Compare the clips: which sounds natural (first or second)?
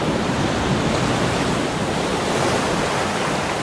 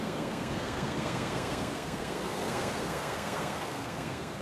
first